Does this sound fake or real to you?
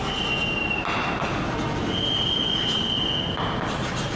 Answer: real